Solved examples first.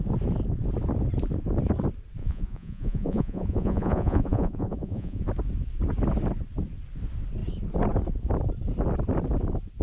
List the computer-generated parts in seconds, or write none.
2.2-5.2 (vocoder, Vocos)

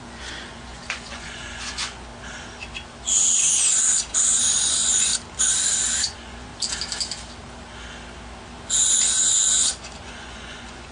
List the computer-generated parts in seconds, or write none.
0.0-2.1 (vocoder, Vocos); 4.1-5.1; 6.0-6.5; 9.1-10.9